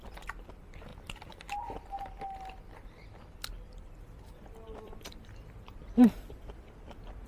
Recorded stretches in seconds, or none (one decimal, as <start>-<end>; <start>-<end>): 0.9-3.7